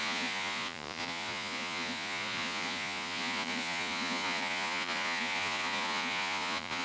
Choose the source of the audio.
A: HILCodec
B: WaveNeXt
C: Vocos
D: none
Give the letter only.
C